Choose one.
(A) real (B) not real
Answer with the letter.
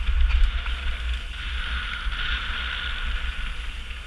A